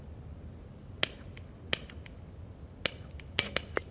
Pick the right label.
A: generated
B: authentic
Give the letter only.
B